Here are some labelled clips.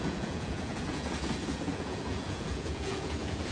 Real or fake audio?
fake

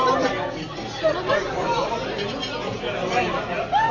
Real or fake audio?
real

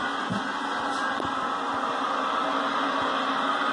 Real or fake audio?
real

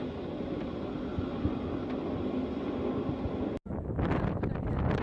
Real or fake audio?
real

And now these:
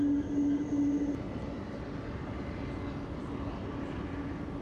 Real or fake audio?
real